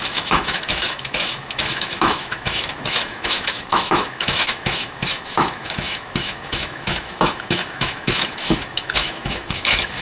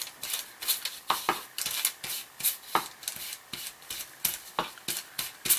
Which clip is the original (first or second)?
second